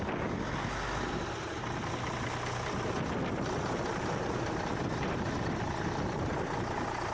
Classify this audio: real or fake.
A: real